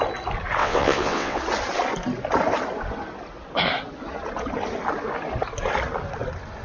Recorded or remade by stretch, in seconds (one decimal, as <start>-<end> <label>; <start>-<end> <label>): 0.0-0.6 recorded; 0.6-1.4 remade; 1.4-6.6 recorded